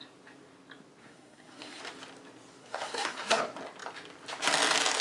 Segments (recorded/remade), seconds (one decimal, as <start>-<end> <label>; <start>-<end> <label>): 0.0-1.0 recorded; 1.0-1.8 remade; 1.8-2.6 recorded; 2.6-3.4 remade; 3.4-5.0 recorded

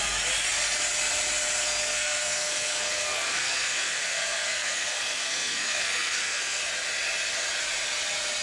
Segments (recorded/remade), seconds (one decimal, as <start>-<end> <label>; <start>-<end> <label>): 0.0-1.6 recorded; 1.6-6.6 remade; 6.6-8.4 recorded

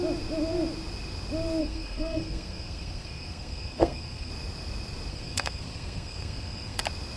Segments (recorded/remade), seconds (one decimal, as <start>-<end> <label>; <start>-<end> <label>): 0.0-1.6 recorded; 1.6-4.3 remade; 4.3-5.1 recorded; 5.1-6.8 remade; 6.8-7.2 recorded

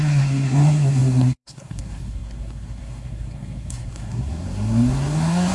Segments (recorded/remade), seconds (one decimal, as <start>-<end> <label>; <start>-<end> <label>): 0.0-5.5 remade